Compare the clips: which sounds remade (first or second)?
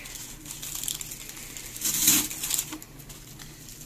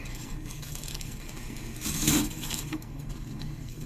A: second